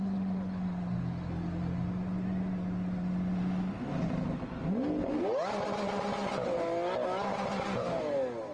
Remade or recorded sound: recorded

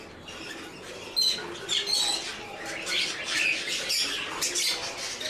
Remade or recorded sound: recorded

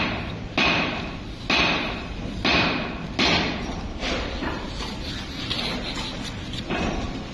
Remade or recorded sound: recorded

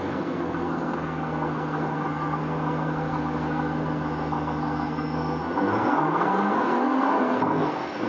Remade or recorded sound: remade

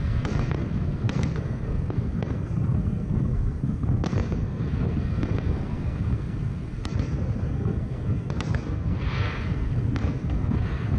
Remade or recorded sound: remade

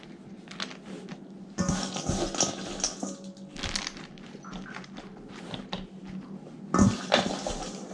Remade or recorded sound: recorded